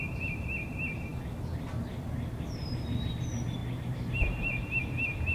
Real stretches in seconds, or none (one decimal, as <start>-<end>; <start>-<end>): 0.0-3.6; 4.8-5.3